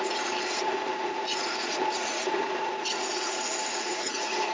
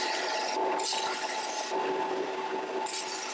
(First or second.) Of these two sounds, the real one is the second